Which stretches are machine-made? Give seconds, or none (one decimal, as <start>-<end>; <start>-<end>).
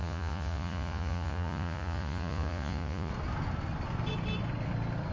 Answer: 0.0-3.1